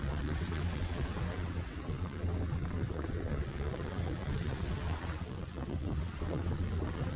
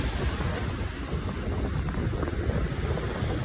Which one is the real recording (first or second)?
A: second